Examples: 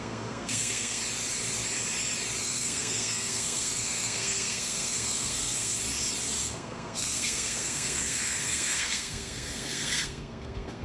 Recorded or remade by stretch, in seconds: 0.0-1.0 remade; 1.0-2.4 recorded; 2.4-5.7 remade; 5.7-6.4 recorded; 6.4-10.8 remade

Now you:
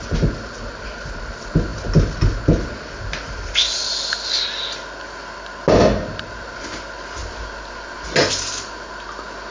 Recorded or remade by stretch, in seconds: 0.0-9.5 recorded

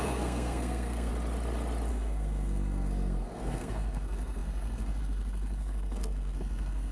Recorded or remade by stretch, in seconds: 0.0-1.1 remade; 1.1-1.9 recorded; 1.9-6.9 remade

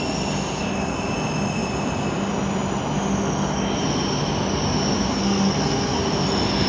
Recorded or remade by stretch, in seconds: 0.0-5.2 recorded; 5.2-6.0 remade; 6.0-6.7 recorded

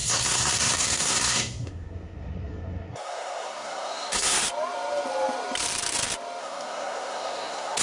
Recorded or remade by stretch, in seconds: 0.0-4.4 remade; 4.4-6.4 recorded; 6.4-7.8 remade

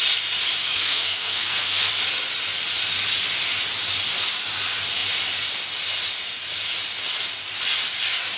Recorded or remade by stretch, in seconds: 0.0-0.6 recorded; 0.6-1.9 remade; 1.9-8.4 recorded

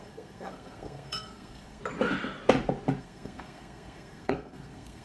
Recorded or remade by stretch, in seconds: 0.0-1.8 remade; 1.8-3.0 recorded; 3.0-5.0 remade

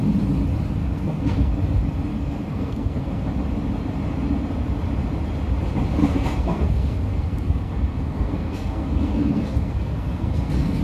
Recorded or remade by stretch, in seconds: 0.0-0.8 recorded; 0.8-1.5 remade; 1.5-2.1 recorded; 2.1-3.3 remade; 3.3-6.0 recorded; 6.0-10.8 remade